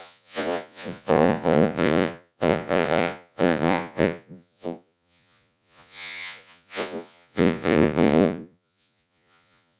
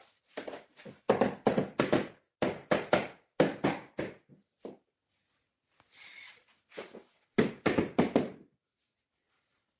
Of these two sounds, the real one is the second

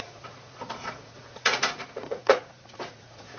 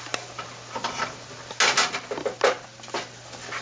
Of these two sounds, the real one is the second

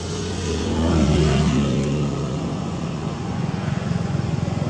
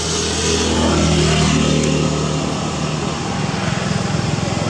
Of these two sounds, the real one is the second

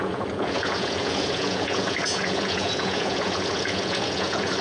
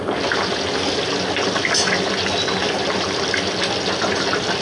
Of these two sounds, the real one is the second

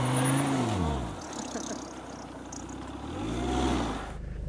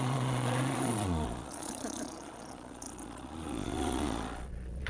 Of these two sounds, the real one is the first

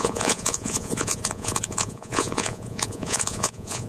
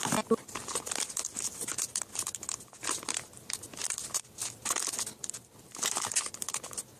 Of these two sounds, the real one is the second